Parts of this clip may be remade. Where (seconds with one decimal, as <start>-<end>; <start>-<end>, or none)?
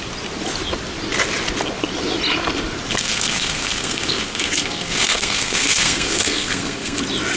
2.9-7.0